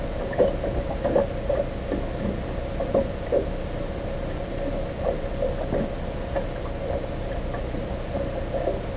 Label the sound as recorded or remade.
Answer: recorded